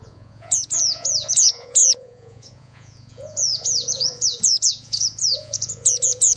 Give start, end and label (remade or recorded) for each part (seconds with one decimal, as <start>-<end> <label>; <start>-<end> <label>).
0.0-6.4 remade